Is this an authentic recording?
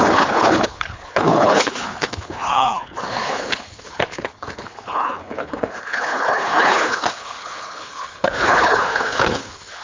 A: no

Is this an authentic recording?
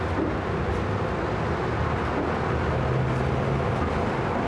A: yes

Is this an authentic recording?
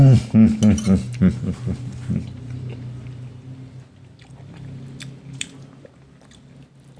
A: yes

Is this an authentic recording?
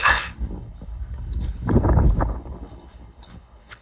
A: no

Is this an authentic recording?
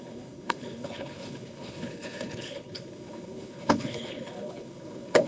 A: no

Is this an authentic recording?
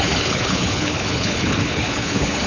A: no